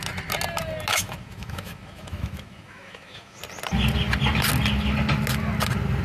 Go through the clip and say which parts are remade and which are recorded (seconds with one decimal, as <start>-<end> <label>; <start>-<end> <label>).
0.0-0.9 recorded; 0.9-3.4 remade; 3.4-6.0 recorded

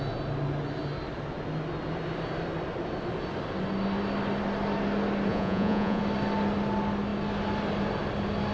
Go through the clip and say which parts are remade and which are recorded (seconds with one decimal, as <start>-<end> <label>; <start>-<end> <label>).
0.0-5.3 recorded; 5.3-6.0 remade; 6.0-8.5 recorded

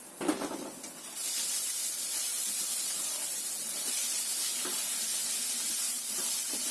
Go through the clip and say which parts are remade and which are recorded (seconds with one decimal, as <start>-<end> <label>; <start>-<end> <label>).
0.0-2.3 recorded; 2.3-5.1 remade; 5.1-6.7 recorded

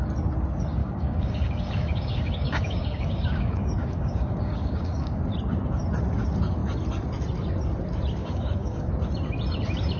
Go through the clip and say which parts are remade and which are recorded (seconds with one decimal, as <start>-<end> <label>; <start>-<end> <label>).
0.0-0.8 recorded; 0.8-5.2 remade; 5.2-8.2 recorded; 8.2-8.9 remade; 8.9-10.0 recorded

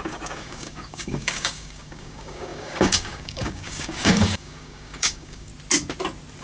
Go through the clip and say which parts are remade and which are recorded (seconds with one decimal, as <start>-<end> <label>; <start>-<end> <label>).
0.0-5.5 remade; 5.5-6.4 recorded

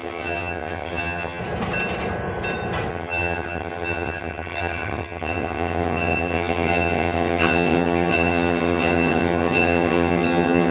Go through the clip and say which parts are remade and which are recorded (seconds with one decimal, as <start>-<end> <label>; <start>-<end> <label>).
0.0-1.4 remade; 1.4-2.9 recorded; 2.9-10.7 remade